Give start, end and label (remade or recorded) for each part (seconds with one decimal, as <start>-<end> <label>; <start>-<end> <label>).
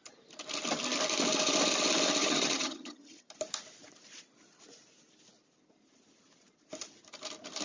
0.0-2.2 recorded; 2.2-3.3 remade; 3.3-7.6 recorded